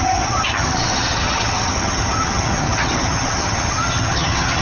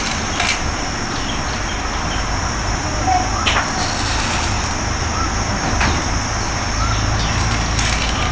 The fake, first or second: first